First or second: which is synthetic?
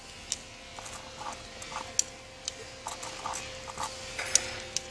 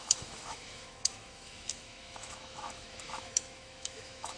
second